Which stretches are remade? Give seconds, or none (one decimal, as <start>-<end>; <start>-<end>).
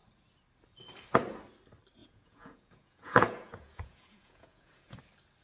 2.0-5.0